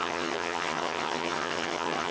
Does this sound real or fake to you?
fake